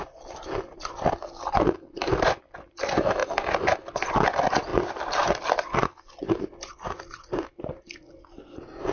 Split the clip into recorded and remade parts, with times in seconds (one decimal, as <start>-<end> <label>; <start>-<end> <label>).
0.0-8.9 recorded